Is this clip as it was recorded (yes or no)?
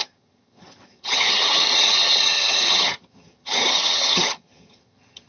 no